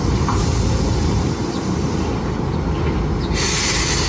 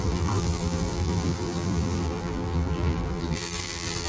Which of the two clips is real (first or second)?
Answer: first